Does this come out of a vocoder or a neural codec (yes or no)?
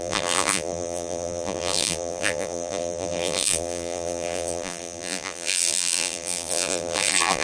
yes